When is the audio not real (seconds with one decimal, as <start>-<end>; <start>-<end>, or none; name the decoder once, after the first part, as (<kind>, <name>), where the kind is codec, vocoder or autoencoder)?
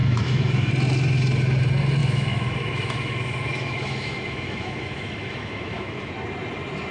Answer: 0.0-0.7 (autoencoder, DAC-VAE); 2.0-6.1